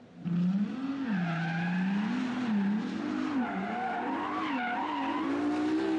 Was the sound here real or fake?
real